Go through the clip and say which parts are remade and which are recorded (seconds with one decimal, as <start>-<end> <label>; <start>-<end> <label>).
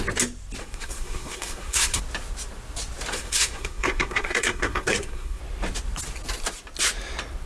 0.0-0.6 recorded; 0.6-2.0 remade; 2.0-3.1 recorded; 3.1-5.4 remade; 5.4-7.5 recorded